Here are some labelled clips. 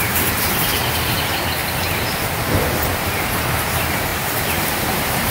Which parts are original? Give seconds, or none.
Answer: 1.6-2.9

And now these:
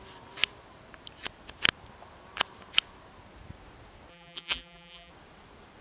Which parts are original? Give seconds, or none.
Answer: 0.0-4.1; 5.1-5.8

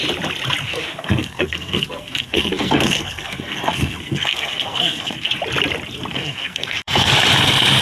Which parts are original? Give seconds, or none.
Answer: 0.0-0.6; 5.3-6.1; 7.1-7.8

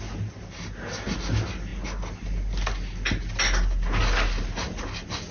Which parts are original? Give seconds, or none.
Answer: 0.0-5.3

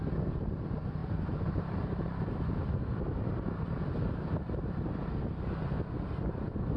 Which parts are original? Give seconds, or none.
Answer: 0.0-1.0; 5.1-6.8

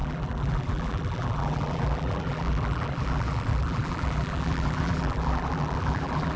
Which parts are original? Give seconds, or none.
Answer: none

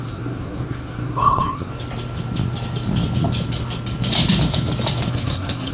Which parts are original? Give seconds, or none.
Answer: 1.7-5.1

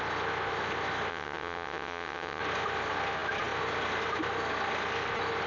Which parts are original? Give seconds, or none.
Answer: 0.0-1.1; 2.4-5.5